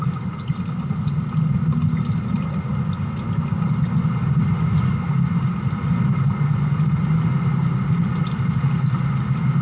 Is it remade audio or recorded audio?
recorded